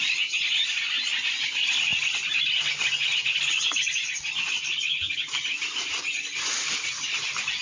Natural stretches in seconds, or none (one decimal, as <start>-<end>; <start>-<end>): 0.0-7.6

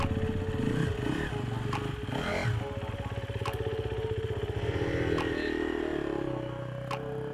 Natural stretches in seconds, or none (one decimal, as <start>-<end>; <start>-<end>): 0.0-7.3